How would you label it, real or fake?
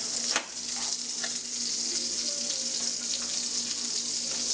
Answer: real